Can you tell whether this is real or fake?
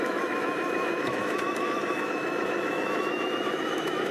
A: fake